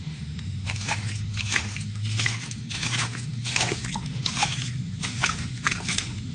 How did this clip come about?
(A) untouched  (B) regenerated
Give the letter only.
B